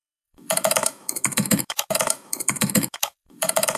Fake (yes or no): yes